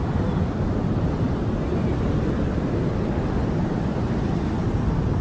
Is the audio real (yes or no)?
yes